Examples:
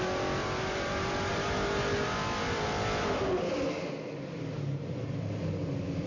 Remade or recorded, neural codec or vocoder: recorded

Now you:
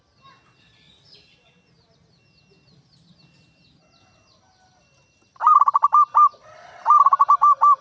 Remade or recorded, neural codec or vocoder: recorded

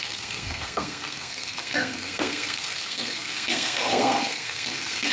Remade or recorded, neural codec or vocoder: remade, codec, SNAC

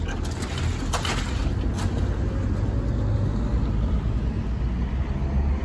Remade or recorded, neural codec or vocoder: recorded